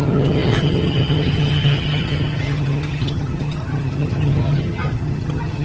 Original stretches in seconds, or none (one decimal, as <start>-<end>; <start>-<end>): none